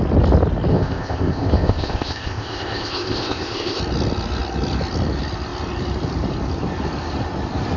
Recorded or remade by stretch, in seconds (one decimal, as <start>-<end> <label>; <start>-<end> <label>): 0.0-0.7 recorded; 0.7-3.8 remade; 3.8-7.8 recorded